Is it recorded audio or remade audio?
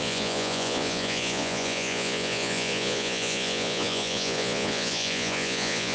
remade